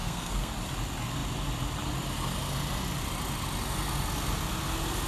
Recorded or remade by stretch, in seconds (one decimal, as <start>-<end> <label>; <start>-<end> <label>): 0.0-0.5 remade; 0.5-5.1 recorded